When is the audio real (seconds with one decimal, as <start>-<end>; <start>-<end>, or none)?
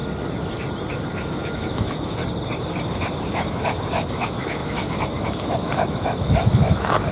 0.0-1.1; 2.2-3.3